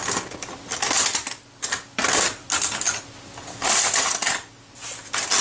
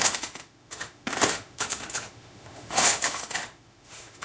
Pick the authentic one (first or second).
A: first